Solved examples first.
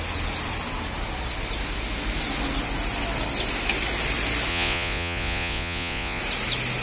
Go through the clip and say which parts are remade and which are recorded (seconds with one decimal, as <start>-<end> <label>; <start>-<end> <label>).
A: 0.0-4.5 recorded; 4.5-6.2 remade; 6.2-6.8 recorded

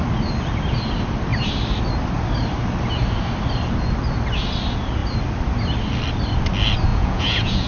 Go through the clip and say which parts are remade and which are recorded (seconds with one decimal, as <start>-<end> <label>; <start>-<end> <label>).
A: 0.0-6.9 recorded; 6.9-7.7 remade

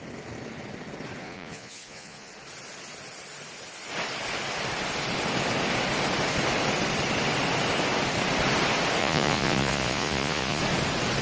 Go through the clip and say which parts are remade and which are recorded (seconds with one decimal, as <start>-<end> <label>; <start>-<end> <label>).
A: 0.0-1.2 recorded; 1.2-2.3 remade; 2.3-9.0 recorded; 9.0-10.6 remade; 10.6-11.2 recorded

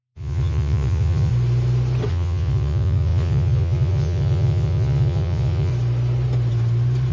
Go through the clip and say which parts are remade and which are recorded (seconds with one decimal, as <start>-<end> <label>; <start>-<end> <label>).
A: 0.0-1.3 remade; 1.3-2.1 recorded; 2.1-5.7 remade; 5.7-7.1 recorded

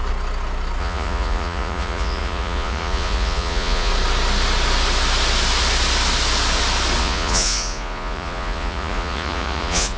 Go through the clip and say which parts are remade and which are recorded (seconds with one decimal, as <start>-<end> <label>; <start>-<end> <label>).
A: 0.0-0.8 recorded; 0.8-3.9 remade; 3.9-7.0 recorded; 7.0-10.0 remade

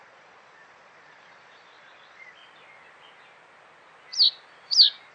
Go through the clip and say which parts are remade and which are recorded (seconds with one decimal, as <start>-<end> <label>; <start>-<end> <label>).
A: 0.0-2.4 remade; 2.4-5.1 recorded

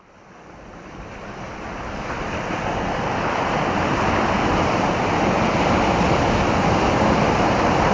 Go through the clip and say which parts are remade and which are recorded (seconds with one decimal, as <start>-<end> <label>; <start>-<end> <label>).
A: 0.0-7.9 recorded

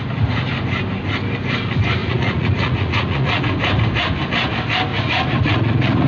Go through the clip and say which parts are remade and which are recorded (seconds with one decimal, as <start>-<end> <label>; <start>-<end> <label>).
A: 0.0-2.0 recorded; 2.0-3.4 remade; 3.4-4.9 recorded; 4.9-6.1 remade